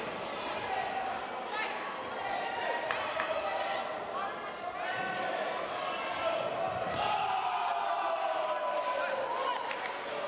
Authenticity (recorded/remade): recorded